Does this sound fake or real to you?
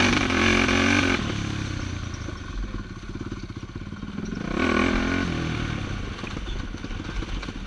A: real